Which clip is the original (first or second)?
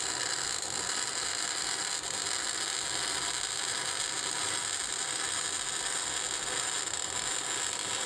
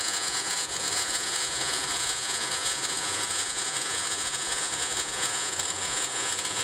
first